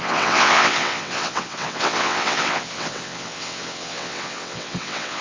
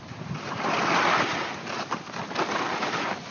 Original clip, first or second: second